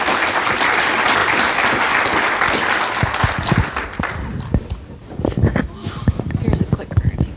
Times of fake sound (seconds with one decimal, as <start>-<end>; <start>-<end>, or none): none